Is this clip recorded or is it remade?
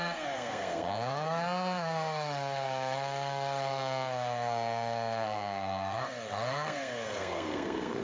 remade